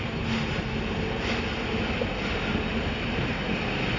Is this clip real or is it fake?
real